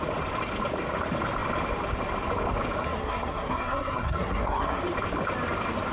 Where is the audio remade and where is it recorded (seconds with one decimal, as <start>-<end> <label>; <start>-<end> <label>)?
0.0-2.8 recorded; 2.8-4.8 remade; 4.8-5.9 recorded